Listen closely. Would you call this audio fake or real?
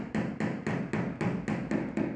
real